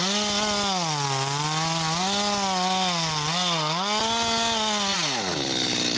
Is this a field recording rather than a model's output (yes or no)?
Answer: yes